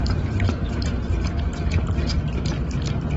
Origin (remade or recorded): remade